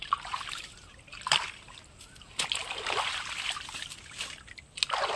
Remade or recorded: recorded